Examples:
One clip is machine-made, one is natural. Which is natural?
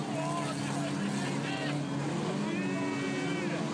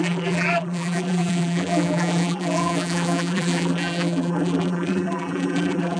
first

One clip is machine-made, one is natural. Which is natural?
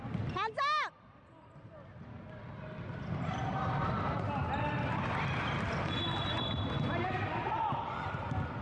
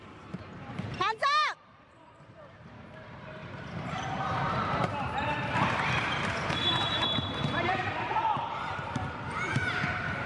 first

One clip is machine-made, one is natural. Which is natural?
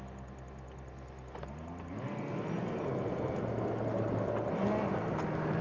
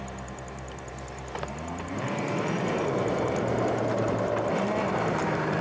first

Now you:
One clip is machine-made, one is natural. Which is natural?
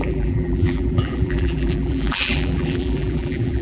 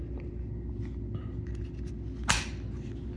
second